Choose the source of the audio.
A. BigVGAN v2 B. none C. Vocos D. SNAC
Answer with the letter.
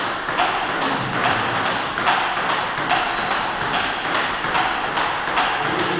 B